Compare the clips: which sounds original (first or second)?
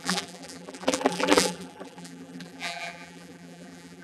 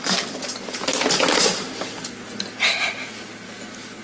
second